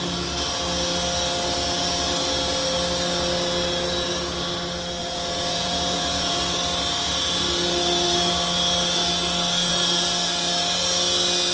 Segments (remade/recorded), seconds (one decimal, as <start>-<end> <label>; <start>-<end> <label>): 0.0-5.0 recorded; 5.0-6.4 remade; 6.4-11.5 recorded